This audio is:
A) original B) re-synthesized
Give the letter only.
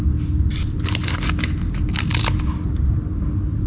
A